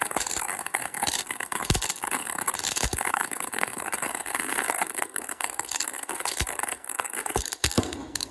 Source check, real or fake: fake